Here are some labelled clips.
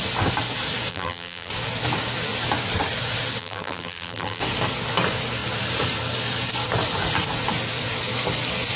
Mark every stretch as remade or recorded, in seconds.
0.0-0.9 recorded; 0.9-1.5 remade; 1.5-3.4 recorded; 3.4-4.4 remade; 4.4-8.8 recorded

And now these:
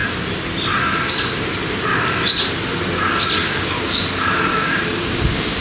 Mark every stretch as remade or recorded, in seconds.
0.0-3.4 recorded; 3.4-4.0 remade; 4.0-4.5 recorded; 4.5-5.6 remade

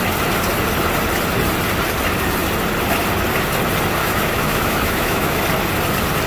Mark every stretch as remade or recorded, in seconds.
0.0-4.0 recorded; 4.0-5.4 remade; 5.4-6.3 recorded

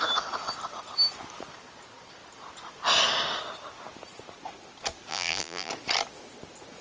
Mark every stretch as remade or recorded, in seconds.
0.0-5.1 recorded; 5.1-5.7 remade; 5.7-6.8 recorded

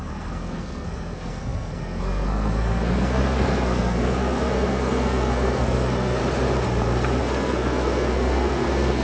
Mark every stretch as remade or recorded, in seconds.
0.0-6.2 remade; 6.2-7.2 recorded; 7.2-9.0 remade

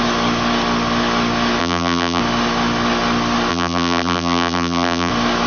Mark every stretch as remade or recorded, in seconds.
0.0-1.6 recorded; 1.6-2.2 remade; 2.2-3.5 recorded; 3.5-5.1 remade; 5.1-5.5 recorded

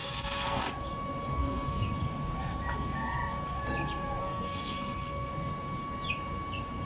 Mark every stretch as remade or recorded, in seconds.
0.0-0.6 remade; 0.6-1.3 recorded; 1.3-1.9 remade; 1.9-4.2 recorded; 4.2-5.3 remade; 5.3-6.9 recorded